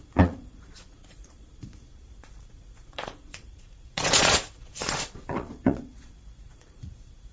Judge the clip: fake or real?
fake